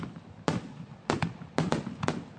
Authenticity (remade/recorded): recorded